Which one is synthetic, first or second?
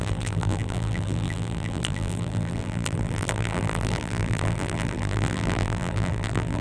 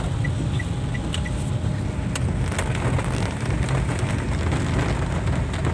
first